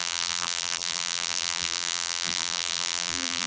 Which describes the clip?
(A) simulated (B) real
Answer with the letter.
A